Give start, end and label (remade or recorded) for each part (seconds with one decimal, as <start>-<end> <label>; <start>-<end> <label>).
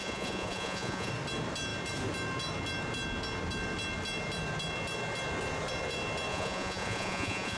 0.0-1.1 remade; 1.1-6.3 recorded; 6.3-7.6 remade